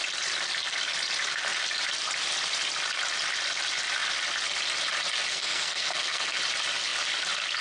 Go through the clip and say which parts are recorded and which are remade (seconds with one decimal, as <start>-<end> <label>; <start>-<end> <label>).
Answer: 0.0-5.3 recorded; 5.3-6.4 remade; 6.4-7.6 recorded

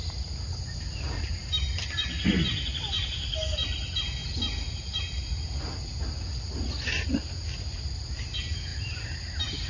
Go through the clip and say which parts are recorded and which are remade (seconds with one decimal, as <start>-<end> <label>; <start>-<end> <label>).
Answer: 0.0-9.7 recorded

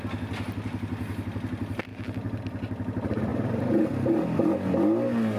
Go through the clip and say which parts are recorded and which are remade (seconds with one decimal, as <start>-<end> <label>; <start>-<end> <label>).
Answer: 0.0-5.4 recorded